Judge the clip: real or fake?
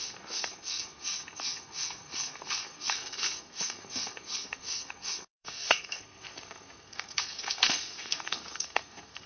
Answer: fake